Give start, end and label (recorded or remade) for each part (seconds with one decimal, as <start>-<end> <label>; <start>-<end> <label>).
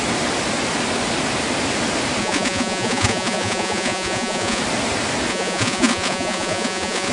0.0-2.2 recorded; 2.2-4.6 remade; 4.6-5.3 recorded; 5.3-7.1 remade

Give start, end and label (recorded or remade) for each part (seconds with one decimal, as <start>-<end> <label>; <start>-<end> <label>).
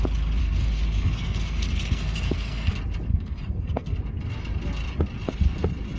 0.0-0.4 recorded; 0.4-2.7 remade; 2.7-3.1 recorded; 3.1-4.0 remade; 4.0-6.0 recorded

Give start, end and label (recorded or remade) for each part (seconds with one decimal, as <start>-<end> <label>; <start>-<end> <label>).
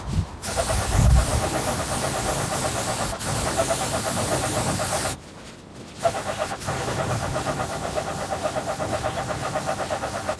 0.0-10.4 recorded